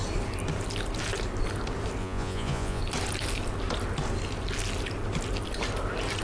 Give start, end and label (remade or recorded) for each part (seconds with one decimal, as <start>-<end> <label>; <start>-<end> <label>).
0.0-2.0 recorded; 2.0-2.8 remade; 2.8-6.2 recorded